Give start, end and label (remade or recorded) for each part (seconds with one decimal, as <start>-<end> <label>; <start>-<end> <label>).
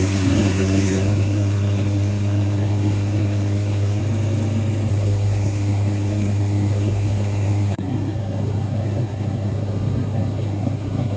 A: 0.0-4.0 remade; 4.0-4.9 recorded; 4.9-11.2 remade